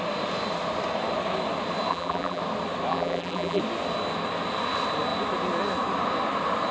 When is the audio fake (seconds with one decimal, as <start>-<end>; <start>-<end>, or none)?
1.9-2.4; 2.9-3.6